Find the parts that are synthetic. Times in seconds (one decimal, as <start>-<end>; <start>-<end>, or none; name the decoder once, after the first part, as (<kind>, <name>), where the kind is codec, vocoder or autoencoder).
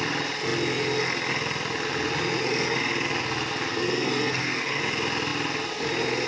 3.7-4.8 (codec, SNAC)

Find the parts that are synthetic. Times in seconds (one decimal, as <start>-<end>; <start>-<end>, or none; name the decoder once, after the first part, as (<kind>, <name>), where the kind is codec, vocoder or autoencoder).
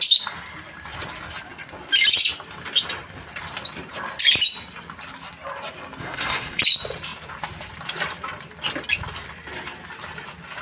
6.0-6.6 (codec, SNAC)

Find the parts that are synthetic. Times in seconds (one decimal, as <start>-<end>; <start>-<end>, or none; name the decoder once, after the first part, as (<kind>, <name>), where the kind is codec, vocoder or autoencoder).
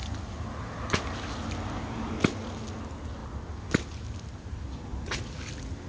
none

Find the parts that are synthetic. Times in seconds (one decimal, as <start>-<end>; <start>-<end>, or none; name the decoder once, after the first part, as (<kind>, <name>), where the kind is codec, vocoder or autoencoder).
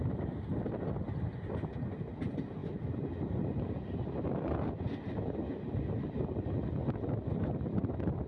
none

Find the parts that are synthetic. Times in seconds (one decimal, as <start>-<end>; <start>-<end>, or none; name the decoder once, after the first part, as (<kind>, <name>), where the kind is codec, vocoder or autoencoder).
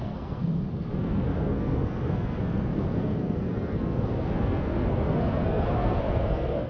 0.0-6.7 (codec, SNAC)